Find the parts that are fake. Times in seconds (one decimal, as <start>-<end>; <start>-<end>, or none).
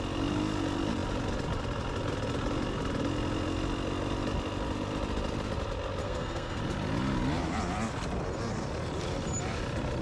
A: 6.0-6.6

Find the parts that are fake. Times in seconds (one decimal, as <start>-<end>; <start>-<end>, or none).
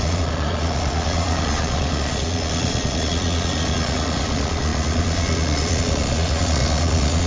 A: 0.0-7.3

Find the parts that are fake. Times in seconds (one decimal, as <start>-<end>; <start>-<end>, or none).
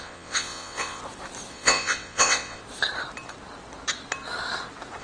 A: 0.0-1.0; 1.5-2.6